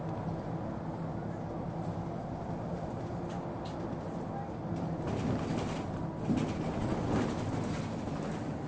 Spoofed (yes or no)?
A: no